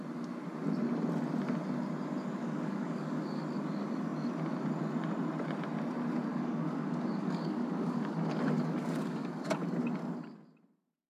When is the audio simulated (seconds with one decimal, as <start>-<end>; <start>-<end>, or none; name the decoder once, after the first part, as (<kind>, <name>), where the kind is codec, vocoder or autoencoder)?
2.4-3.4 (codec, DAC); 6.3-9.6